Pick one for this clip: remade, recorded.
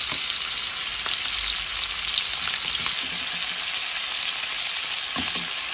recorded